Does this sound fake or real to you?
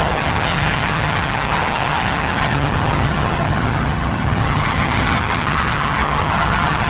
fake